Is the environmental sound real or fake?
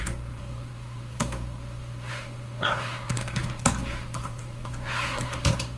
fake